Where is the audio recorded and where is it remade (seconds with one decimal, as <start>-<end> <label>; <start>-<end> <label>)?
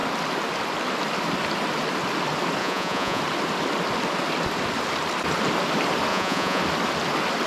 0.0-2.6 recorded; 2.6-3.2 remade; 3.2-6.1 recorded; 6.1-6.6 remade; 6.6-7.5 recorded